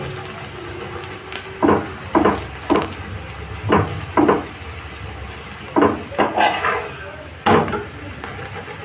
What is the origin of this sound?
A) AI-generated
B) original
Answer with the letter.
B